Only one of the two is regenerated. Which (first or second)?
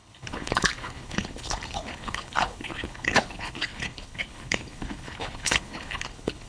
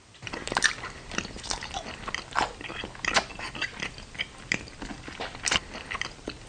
first